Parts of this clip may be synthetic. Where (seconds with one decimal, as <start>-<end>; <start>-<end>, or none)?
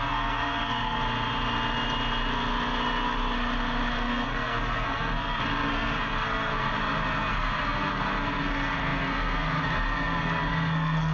0.0-1.0; 3.9-6.7; 7.3-11.1